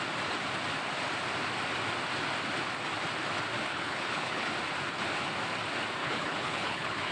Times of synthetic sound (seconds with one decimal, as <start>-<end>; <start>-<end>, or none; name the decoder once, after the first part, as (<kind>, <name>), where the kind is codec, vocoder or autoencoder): 3.7-4.5 (codec, HILCodec); 6.0-7.1